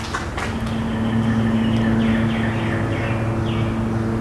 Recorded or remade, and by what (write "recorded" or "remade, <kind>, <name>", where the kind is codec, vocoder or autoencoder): recorded